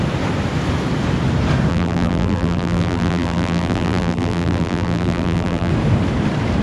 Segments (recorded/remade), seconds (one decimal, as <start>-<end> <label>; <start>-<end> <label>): 0.0-1.7 recorded; 1.7-5.7 remade; 5.7-6.6 recorded